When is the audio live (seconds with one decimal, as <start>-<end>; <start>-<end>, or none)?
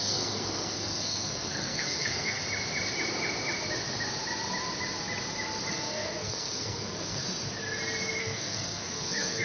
2.4-5.7; 7.2-8.2